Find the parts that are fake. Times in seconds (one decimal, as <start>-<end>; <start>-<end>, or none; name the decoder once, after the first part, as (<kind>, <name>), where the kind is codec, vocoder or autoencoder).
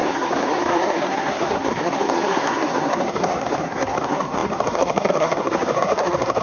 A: 0.0-6.4 (codec, SNAC)